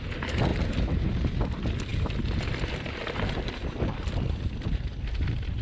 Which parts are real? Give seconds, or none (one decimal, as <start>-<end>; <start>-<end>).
0.0-0.5; 1.3-5.6

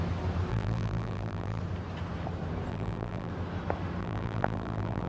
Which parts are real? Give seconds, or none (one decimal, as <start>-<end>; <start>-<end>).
0.0-0.5; 1.6-2.7; 3.3-4.0

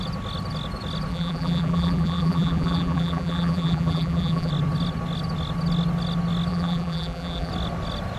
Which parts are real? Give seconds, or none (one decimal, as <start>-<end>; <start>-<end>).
0.0-1.1; 4.5-6.5; 7.5-8.2

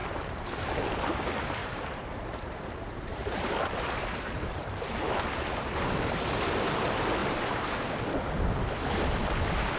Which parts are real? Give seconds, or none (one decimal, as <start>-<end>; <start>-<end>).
1.0-1.6; 5.3-7.2; 8.1-9.8

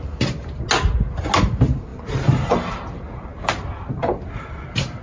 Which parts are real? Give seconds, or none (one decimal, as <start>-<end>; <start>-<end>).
0.0-1.9; 4.3-5.0

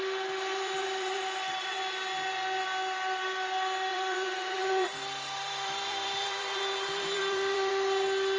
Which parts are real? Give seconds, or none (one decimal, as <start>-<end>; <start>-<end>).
0.0-0.5; 1.8-3.9; 7.7-8.4

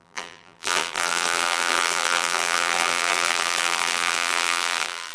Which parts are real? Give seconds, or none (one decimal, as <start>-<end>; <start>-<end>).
none

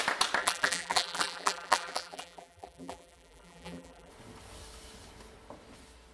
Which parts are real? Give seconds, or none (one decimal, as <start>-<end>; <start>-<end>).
0.0-0.4; 4.1-6.1